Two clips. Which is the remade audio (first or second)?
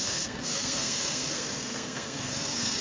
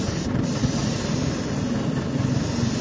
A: first